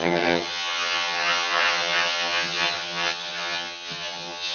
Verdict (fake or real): fake